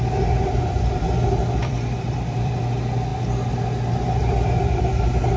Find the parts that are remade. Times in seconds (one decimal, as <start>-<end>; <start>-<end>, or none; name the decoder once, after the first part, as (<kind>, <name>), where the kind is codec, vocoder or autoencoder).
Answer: 1.6-2.6 (vocoder, BigVGAN v2)